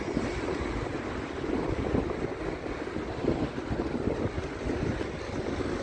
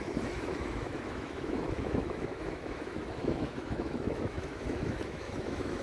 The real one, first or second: first